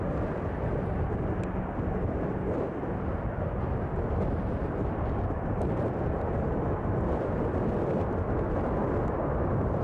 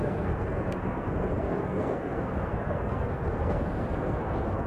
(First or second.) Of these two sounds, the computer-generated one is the second